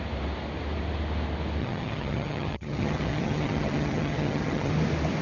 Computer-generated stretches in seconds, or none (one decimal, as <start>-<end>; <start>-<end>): 1.6-4.7